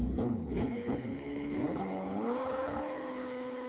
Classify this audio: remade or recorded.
remade